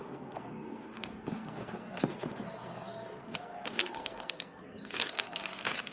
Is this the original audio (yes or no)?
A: no